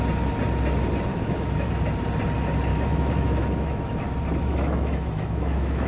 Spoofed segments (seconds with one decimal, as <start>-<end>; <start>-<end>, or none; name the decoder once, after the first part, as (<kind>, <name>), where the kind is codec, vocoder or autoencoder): 1.1-1.7 (autoencoder, DAC-VAE); 2.7-4.0; 4.4-5.9